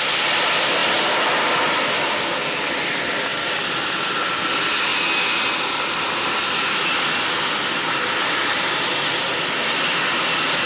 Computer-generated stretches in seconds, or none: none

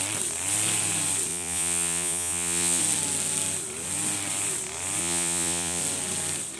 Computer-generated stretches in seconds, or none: 1.3-2.8 (vocoder, Vocos); 5.0-5.8

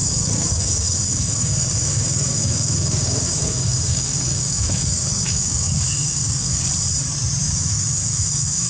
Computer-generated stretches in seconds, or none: 0.0-6.7 (codec, DAC); 7.4-8.7

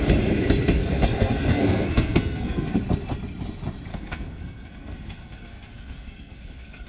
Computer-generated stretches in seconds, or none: 0.8-2.8 (codec, SNAC); 3.9-6.9

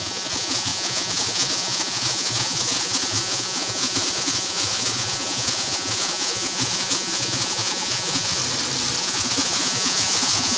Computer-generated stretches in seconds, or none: 0.0-8.4 (vocoder, Vocos); 9.0-10.6